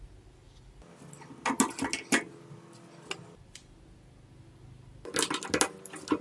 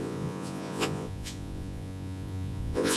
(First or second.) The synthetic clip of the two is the second